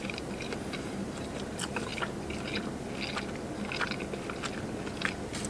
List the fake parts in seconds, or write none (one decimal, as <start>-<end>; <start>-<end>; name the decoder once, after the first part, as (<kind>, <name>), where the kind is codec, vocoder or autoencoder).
0.0-1.9 (vocoder, BigVGAN v2)